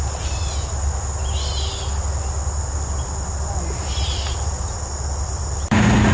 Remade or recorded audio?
recorded